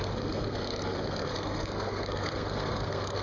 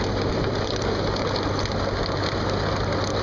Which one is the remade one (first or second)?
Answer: first